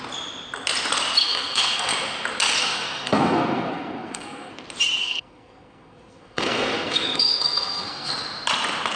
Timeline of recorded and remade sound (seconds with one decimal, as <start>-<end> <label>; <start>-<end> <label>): 0.0-1.2 recorded; 1.2-1.9 remade; 1.9-2.6 recorded; 2.6-4.5 remade; 4.5-5.0 recorded; 5.0-8.1 remade; 8.1-9.0 recorded

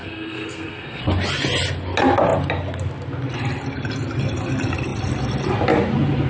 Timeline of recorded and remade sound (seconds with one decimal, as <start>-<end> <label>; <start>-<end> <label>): 0.0-1.0 remade; 1.0-6.3 recorded

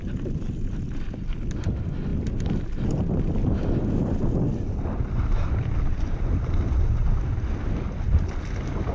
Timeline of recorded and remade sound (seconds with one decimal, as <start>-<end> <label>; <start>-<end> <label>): 0.0-8.9 recorded